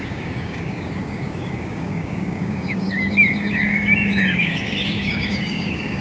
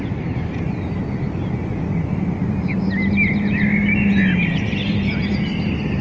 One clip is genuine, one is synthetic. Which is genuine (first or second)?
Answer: second